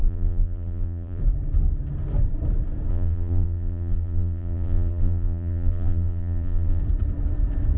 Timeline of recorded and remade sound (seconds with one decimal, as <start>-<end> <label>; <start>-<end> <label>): 0.0-1.2 remade; 1.2-2.9 recorded; 2.9-6.8 remade; 6.8-7.8 recorded